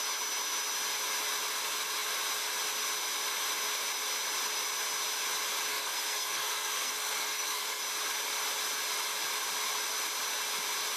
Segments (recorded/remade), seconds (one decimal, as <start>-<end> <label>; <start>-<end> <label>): 0.0-5.7 recorded; 5.7-7.8 remade; 7.8-11.0 recorded